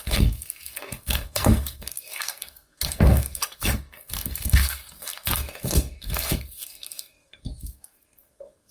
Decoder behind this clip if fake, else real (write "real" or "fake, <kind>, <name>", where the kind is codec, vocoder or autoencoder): fake, codec, SNAC